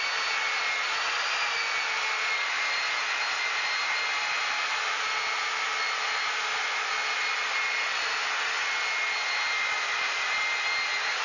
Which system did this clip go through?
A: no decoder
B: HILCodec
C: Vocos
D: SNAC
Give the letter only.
A